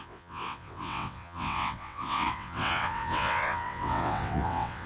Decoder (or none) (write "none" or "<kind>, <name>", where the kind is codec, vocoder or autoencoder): vocoder, WaveNeXt